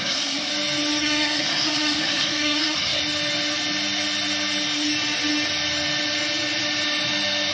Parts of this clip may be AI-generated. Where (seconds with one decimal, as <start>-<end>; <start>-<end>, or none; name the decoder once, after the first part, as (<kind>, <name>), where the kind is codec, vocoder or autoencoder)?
0.0-0.5 (codec, SNAC); 1.0-3.0